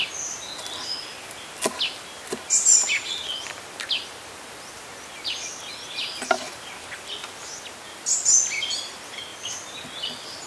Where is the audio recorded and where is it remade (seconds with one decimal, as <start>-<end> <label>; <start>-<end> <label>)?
0.0-10.5 recorded